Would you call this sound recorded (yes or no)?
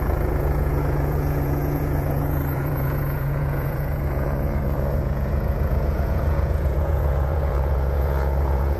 no